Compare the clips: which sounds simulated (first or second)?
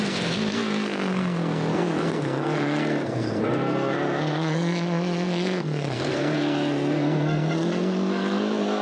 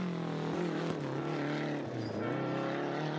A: first